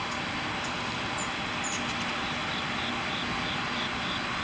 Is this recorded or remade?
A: recorded